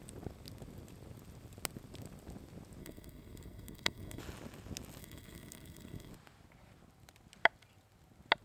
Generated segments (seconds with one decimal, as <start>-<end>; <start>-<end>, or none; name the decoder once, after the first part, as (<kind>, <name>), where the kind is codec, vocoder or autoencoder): 2.8-4.2 (codec, SNAC); 5.0-6.1